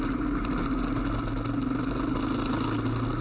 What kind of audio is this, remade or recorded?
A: recorded